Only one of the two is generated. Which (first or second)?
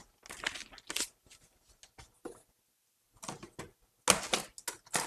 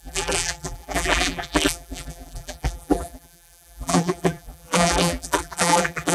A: second